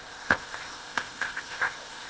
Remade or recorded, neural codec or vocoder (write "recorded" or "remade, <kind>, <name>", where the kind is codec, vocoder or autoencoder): remade, codec, ZipCodec